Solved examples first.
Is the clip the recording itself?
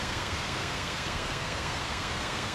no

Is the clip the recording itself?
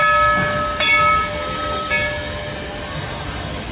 yes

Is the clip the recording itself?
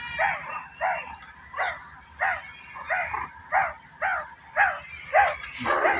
yes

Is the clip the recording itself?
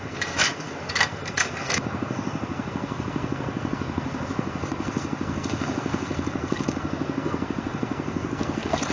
no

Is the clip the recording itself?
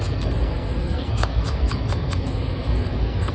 no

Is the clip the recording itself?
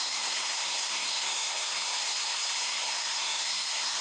no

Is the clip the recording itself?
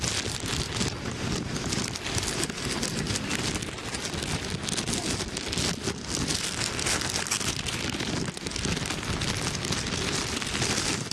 yes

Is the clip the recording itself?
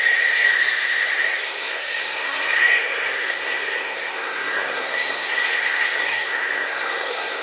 no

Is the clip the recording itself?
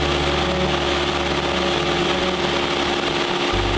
yes